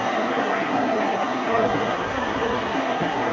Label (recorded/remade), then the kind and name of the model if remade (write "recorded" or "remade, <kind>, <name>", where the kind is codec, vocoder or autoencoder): remade, codec, SNAC